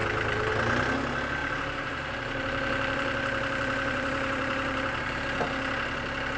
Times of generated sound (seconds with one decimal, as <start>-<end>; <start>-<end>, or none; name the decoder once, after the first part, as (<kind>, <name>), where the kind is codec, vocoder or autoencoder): 0.0-0.5 (vocoder, BigVGAN v2); 1.4-5.2